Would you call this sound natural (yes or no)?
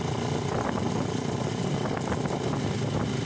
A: yes